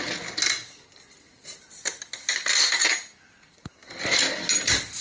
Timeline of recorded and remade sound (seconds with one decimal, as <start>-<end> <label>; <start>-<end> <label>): 0.0-3.8 recorded; 3.8-4.3 remade; 4.3-5.0 recorded